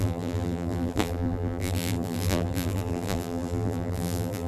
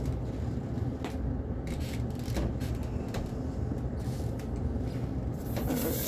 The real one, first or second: second